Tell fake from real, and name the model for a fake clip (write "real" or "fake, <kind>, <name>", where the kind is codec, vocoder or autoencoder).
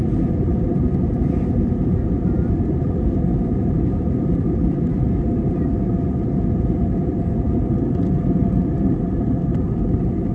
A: fake, vocoder, BigVGAN v2